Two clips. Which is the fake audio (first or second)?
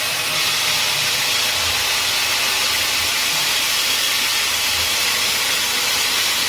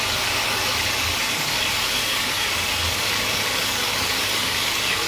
second